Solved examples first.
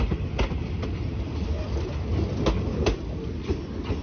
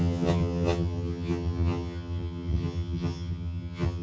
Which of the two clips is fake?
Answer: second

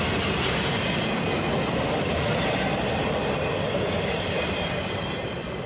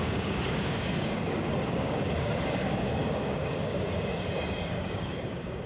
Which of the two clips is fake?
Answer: second